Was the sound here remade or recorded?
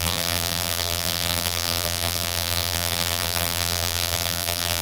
remade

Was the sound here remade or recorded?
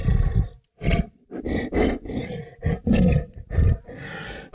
recorded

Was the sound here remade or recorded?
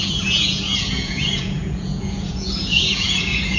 remade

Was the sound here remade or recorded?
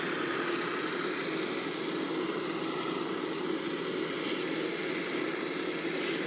recorded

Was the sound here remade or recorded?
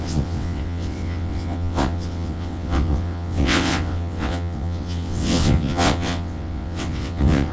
remade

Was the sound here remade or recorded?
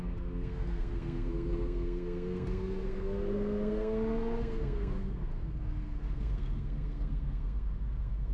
remade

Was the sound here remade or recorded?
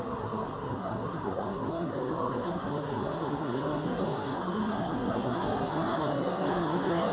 remade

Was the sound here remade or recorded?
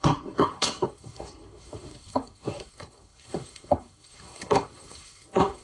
remade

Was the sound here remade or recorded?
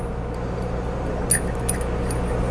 recorded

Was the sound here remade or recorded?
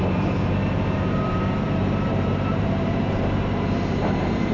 remade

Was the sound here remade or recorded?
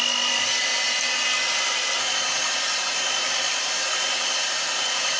recorded